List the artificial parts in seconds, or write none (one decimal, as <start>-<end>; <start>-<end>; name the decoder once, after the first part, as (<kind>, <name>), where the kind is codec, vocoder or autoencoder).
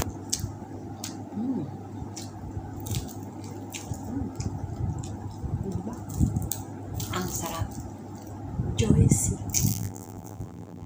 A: 9.7-10.9 (vocoder, BigVGAN v2)